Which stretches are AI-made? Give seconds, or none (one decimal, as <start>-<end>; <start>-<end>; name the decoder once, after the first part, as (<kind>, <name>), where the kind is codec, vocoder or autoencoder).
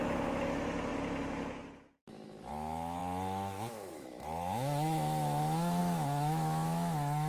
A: 0.0-7.3 (autoencoder, DAC-VAE)